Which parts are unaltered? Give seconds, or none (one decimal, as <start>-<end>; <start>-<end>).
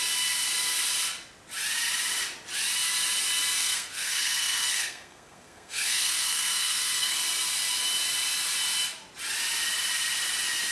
0.0-3.6; 7.2-10.7